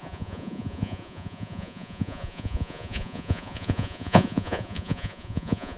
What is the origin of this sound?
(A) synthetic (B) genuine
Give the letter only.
A